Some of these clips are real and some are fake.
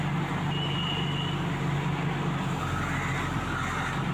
real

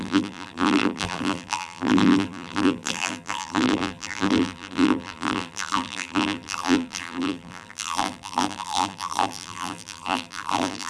fake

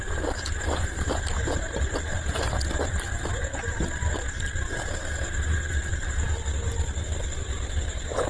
fake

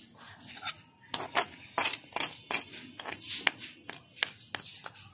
real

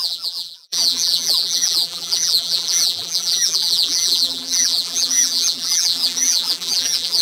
fake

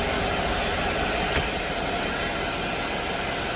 real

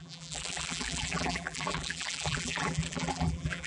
fake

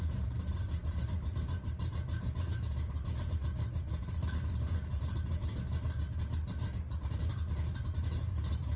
fake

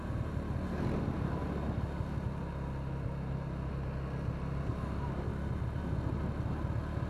real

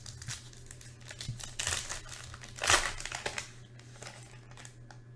real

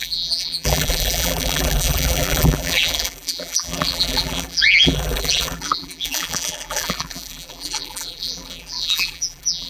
fake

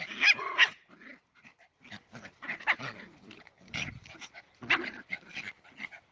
fake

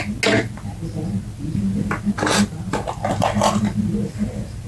real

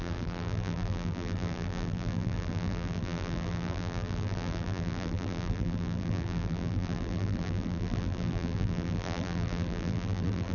fake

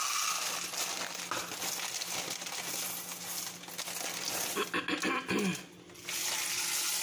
real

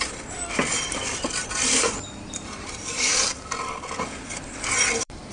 fake